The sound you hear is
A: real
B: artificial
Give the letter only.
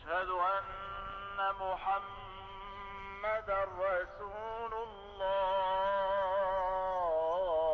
B